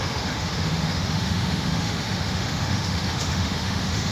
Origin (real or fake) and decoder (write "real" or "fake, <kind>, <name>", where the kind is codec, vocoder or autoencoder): fake, autoencoder, DAC-VAE